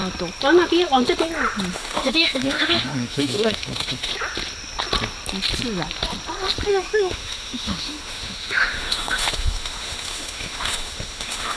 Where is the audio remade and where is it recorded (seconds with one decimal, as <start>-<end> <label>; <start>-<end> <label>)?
0.0-1.7 recorded; 1.7-4.1 remade; 4.1-6.7 recorded; 6.7-11.6 remade